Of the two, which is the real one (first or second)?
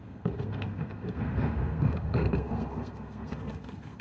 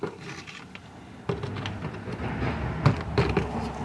second